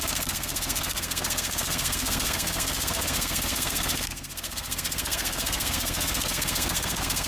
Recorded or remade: remade